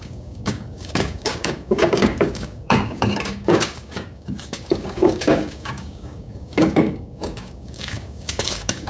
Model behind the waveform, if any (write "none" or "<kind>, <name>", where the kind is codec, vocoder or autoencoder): codec, DAC